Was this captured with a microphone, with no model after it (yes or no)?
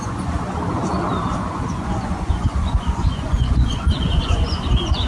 no